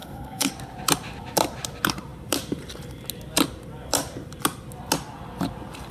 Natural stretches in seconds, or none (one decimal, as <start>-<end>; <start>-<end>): 0.5-5.9